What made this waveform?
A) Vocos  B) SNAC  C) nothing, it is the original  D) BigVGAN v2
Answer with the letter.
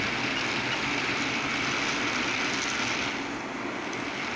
C